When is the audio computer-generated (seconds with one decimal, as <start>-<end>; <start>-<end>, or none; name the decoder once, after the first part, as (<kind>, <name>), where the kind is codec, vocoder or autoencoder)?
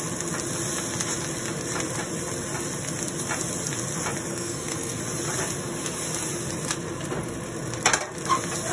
4.3-5.0 (codec, SNAC)